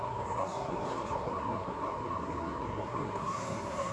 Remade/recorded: remade